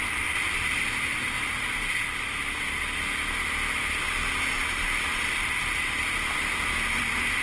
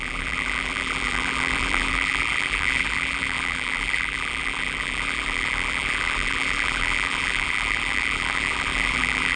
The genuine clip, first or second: first